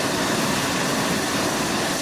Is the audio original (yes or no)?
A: yes